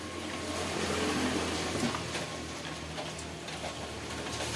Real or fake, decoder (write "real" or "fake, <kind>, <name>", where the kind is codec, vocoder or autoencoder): real